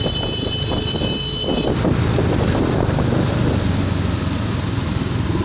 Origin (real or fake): real